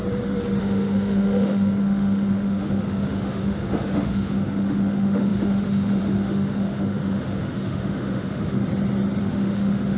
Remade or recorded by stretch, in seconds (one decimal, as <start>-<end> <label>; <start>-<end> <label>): 0.0-0.6 recorded; 0.6-8.7 remade; 8.7-9.2 recorded; 9.2-10.0 remade

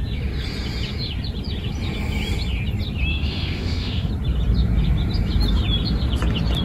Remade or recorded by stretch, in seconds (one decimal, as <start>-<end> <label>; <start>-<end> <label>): 0.0-3.1 recorded; 3.1-4.1 remade; 4.1-6.6 recorded

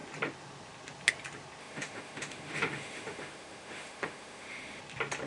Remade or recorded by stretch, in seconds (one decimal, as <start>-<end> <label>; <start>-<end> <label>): 0.0-1.6 recorded; 1.6-4.8 remade; 4.8-5.3 recorded

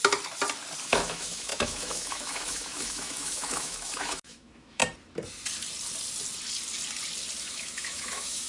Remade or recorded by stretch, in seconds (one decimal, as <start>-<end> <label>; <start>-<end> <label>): 0.0-0.8 recorded; 0.8-4.8 remade; 4.8-7.4 recorded; 7.4-8.5 remade

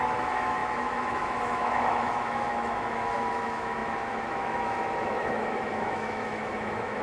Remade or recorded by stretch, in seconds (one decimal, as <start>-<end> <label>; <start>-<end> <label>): 0.0-7.0 remade

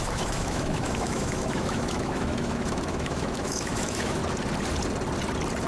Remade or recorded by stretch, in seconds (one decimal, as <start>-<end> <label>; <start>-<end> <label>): 0.0-4.2 remade; 4.2-5.7 recorded

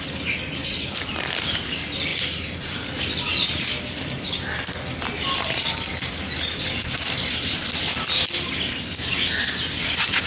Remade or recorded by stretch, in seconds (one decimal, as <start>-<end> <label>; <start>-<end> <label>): 0.0-10.3 recorded

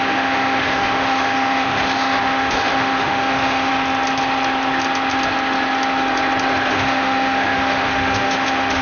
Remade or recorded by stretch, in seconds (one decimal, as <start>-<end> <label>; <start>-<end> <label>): 0.0-3.7 remade; 3.7-6.7 recorded; 6.7-8.8 remade